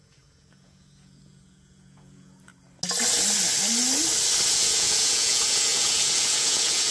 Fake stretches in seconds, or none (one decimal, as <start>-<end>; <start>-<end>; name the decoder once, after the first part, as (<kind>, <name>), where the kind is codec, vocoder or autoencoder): 0.0-2.5 (vocoder, Vocos); 4.5-6.9